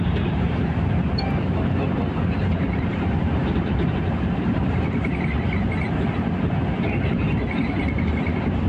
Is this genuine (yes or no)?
no